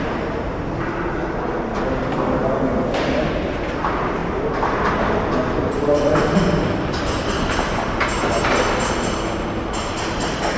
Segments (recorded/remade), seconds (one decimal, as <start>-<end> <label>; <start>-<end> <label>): 0.0-5.6 recorded; 5.6-8.2 remade; 8.2-10.6 recorded